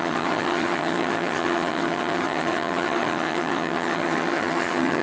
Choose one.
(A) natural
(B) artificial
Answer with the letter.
B